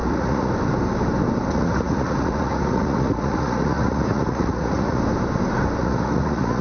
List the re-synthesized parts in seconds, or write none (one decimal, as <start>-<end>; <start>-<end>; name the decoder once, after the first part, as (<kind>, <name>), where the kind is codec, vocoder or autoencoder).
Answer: 0.0-0.5 (vocoder, Vocos); 1.5-5.0; 5.8-6.6